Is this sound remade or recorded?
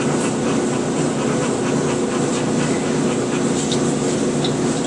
recorded